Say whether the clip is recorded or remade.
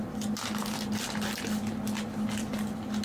recorded